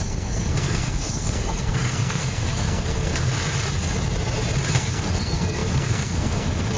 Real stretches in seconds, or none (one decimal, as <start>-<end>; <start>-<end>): 3.3-4.7